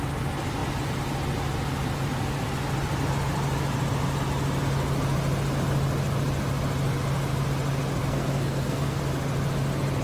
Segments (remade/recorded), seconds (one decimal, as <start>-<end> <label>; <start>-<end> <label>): 0.0-8.0 recorded; 8.0-9.0 remade; 9.0-10.0 recorded